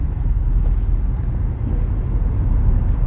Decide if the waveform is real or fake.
real